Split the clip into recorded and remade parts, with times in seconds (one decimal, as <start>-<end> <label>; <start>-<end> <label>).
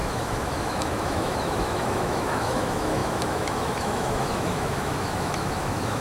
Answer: 0.0-6.0 remade